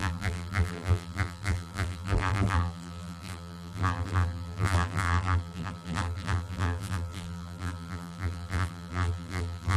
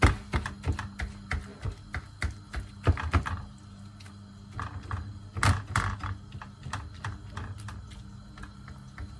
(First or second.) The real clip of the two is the second